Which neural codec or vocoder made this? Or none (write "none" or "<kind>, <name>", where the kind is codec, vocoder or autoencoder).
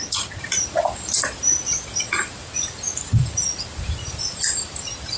vocoder, BigVGAN v2